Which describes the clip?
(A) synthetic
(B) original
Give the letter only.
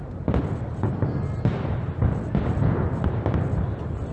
B